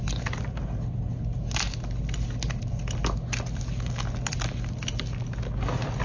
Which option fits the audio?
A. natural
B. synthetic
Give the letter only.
A